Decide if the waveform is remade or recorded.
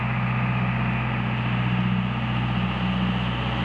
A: recorded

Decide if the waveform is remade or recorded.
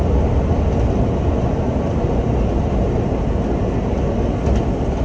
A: recorded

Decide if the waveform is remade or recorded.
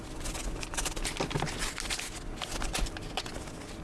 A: recorded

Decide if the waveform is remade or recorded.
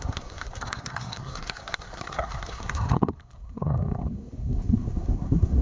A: remade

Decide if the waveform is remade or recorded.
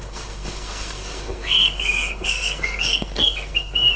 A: remade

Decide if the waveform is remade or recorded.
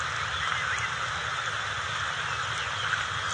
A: recorded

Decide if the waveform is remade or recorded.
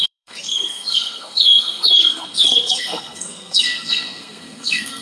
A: remade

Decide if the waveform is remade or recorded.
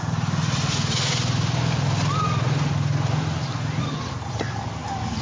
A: recorded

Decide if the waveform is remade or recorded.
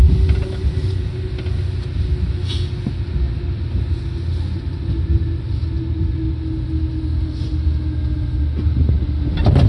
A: recorded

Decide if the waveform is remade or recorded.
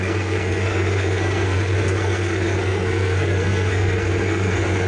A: remade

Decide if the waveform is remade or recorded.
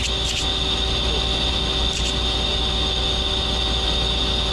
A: recorded